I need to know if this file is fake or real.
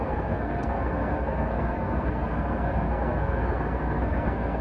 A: fake